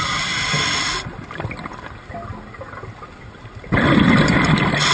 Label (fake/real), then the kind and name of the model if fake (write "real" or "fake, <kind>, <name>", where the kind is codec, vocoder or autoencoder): real